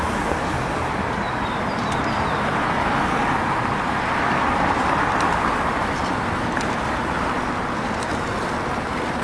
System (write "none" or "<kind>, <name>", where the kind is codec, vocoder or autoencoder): none